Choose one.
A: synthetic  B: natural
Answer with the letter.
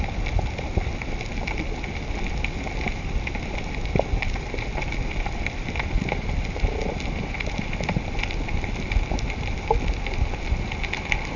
B